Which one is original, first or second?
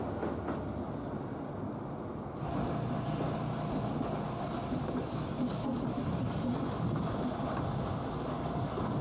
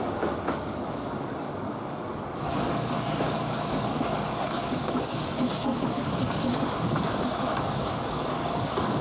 first